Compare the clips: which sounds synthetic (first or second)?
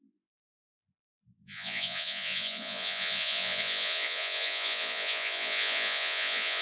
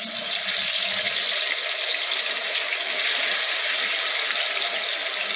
first